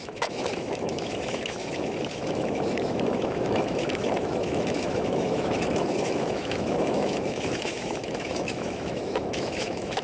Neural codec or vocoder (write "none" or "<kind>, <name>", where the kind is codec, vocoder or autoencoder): autoencoder, DAC-VAE